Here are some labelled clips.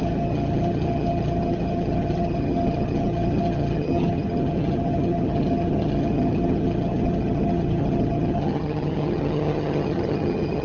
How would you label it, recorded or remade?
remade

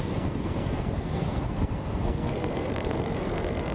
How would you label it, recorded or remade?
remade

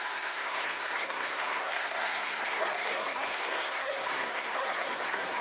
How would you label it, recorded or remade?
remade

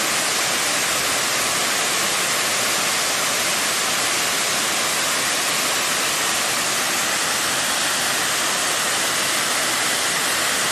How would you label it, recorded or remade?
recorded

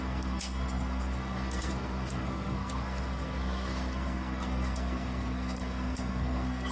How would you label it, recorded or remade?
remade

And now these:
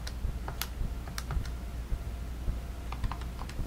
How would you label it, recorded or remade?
recorded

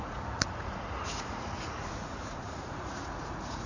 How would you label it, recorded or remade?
remade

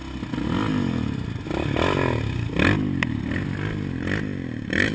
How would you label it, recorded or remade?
recorded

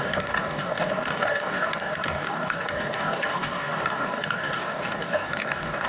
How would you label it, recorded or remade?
remade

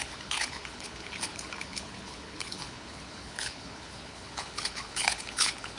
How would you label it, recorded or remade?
remade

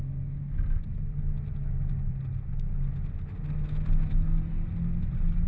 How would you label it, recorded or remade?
recorded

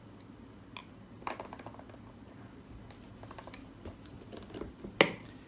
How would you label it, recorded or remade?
recorded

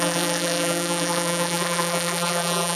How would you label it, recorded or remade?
remade